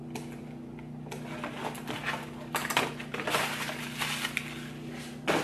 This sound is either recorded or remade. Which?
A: recorded